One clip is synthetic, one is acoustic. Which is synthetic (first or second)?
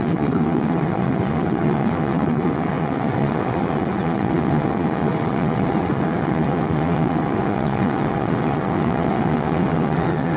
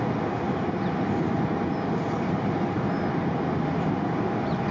first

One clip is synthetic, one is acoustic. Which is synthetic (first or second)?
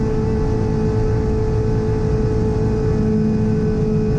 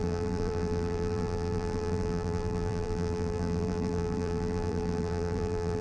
second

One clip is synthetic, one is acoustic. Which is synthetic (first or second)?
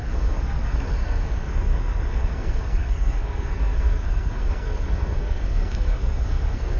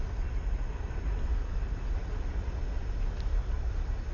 first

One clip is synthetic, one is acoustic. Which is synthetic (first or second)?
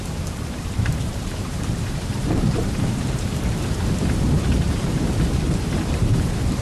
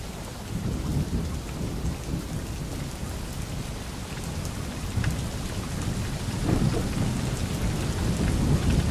first